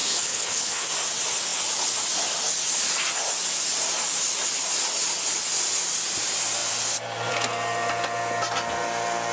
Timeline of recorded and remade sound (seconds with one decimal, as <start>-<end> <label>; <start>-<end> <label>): 0.0-0.9 remade; 0.9-9.3 recorded